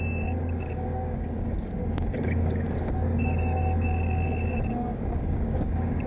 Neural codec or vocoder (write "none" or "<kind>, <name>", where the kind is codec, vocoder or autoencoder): codec, DAC